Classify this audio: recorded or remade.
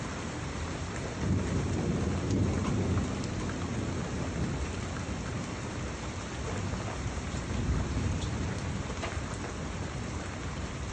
recorded